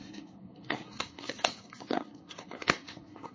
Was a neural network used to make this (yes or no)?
yes